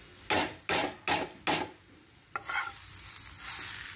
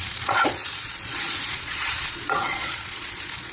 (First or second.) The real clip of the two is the first